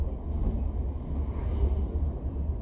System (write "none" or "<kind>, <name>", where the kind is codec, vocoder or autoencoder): none